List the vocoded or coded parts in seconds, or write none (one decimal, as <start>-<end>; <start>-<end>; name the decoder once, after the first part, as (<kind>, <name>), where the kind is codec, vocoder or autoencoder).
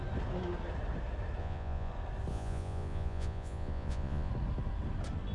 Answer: 1.4-1.9 (vocoder, Vocos); 2.3-4.3